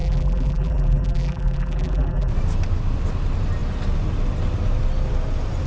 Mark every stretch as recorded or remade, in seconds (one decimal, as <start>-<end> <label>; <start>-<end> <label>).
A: 0.0-2.3 remade; 2.3-5.7 recorded